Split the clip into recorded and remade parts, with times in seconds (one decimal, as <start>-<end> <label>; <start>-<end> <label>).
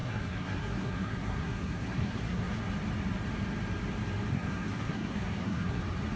0.0-2.6 remade; 2.6-4.3 recorded; 4.3-5.8 remade; 5.8-6.2 recorded